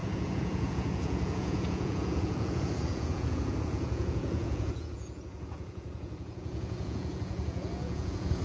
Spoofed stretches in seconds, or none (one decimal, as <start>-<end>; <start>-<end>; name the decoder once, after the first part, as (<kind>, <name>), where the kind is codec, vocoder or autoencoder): 0.0-8.4 (vocoder, Vocos)